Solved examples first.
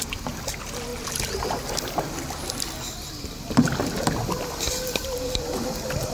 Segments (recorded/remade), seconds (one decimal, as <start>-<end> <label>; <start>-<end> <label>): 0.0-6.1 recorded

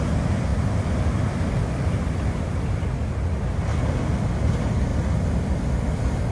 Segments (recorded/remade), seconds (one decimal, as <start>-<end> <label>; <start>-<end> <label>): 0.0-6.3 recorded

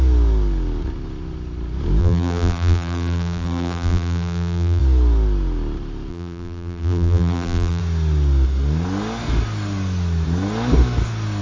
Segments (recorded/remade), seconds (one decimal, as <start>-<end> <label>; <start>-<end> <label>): 0.0-2.0 recorded; 2.0-4.8 remade; 4.8-6.1 recorded; 6.1-7.8 remade; 7.8-11.4 recorded